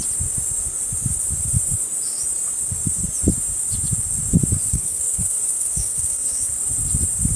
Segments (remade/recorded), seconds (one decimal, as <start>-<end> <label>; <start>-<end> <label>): 0.0-4.7 recorded; 4.7-6.5 remade; 6.5-7.4 recorded